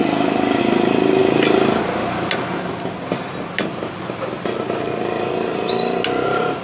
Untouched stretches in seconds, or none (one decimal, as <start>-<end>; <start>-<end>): 0.0-6.6